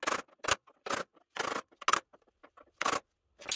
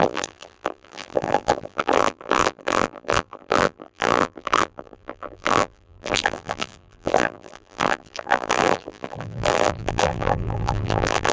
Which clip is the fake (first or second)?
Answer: second